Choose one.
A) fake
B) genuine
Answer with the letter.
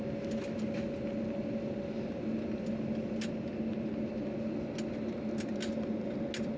B